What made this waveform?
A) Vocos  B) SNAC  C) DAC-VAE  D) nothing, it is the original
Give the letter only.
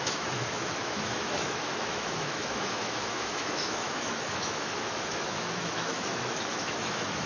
C